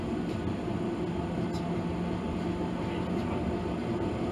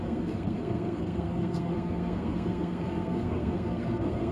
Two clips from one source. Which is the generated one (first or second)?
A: second